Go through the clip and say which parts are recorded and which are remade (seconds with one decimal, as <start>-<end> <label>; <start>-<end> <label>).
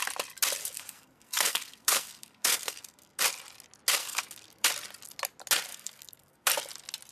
0.0-0.6 recorded; 0.6-3.2 remade; 3.2-4.0 recorded; 4.0-4.7 remade; 4.7-5.7 recorded; 5.7-6.5 remade; 6.5-7.1 recorded